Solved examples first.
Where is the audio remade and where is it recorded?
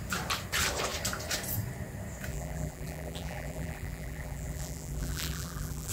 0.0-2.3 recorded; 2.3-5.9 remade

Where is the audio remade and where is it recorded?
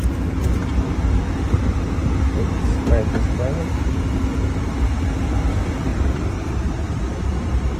0.0-5.9 recorded; 5.9-7.8 remade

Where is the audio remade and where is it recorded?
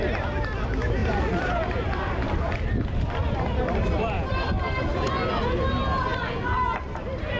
0.0-1.0 recorded; 1.0-5.1 remade; 5.1-6.1 recorded; 6.1-7.4 remade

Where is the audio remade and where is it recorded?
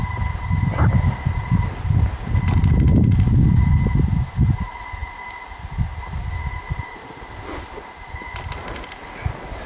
0.0-9.7 recorded